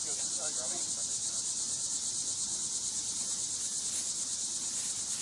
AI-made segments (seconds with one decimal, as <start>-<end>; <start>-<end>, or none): 2.0-3.8